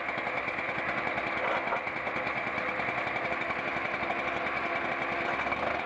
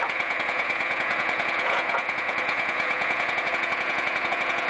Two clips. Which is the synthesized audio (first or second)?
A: second